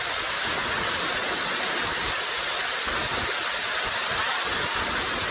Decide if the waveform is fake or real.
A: real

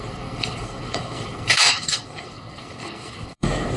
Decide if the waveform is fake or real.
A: fake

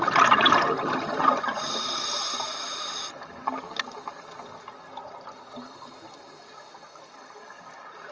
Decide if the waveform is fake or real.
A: real